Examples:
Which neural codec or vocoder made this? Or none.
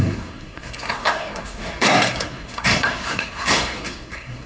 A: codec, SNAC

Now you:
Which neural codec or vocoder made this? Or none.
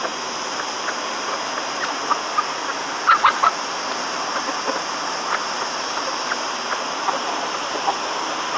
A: none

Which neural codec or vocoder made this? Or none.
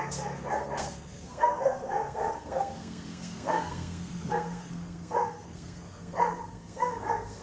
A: codec, SNAC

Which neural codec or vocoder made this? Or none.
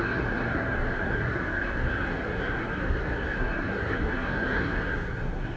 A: codec, SNAC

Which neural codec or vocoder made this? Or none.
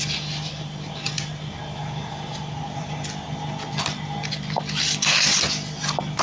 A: none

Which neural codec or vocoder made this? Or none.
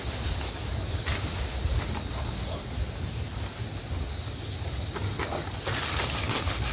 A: none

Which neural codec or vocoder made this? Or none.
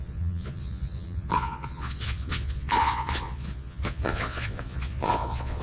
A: vocoder, Vocos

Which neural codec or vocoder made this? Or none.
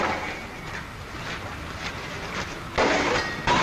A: none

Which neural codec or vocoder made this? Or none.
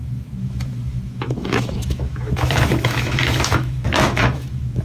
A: autoencoder, DAC-VAE